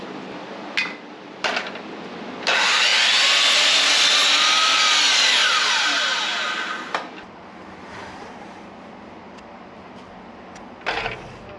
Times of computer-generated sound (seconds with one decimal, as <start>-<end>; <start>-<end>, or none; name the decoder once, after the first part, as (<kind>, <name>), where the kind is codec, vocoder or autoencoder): none